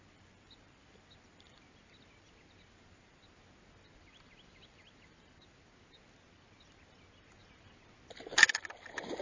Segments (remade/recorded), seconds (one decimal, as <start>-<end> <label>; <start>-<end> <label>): 0.0-9.2 recorded